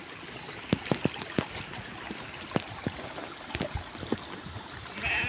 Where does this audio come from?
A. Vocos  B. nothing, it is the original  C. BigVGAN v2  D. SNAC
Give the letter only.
B